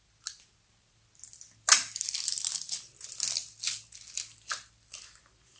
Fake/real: real